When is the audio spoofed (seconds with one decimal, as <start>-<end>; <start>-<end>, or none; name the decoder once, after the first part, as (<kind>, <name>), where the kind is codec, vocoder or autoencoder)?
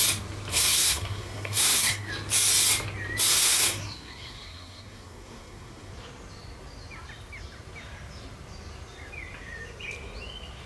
0.5-2.1 (codec, SNAC); 3.3-5.9